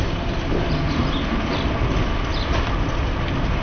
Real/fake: real